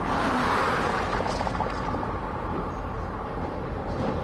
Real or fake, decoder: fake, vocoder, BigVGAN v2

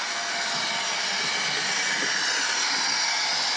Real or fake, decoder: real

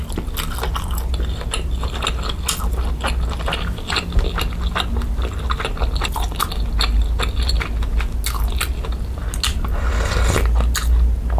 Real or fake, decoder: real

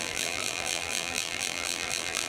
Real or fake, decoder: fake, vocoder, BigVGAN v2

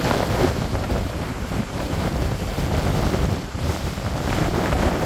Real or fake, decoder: fake, vocoder, BigVGAN v2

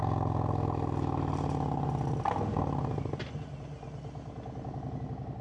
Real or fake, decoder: real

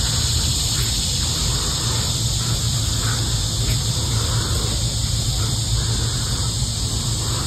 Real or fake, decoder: real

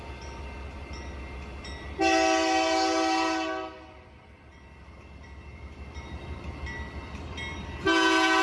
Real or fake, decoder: real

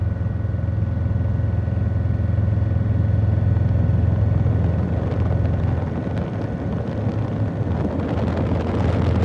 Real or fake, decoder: real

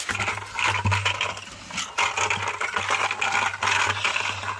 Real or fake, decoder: real